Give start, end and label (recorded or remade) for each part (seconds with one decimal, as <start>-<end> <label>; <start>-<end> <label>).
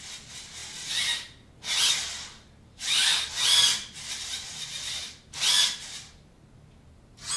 0.0-7.4 recorded